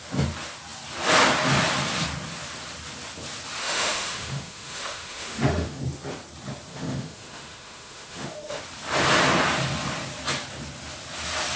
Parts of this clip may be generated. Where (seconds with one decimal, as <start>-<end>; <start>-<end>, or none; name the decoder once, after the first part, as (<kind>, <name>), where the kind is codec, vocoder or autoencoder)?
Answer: 3.6-5.8 (autoencoder, DAC-VAE); 6.7-8.6